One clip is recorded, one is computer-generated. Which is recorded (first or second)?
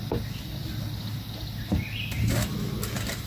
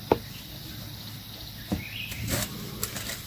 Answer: first